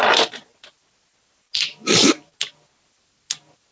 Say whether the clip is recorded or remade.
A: recorded